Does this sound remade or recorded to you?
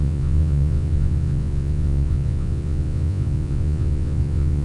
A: remade